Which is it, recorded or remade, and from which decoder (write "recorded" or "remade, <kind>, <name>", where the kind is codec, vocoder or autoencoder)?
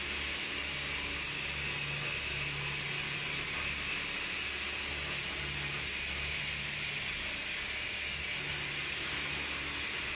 recorded